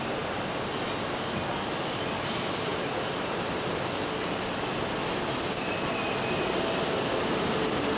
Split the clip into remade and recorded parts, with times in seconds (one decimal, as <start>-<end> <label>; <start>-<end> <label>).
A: 0.0-8.0 recorded